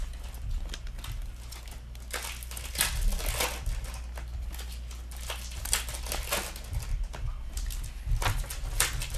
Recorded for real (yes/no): yes